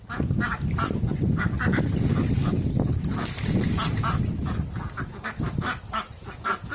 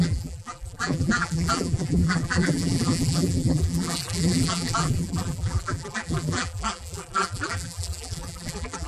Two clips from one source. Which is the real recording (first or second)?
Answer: first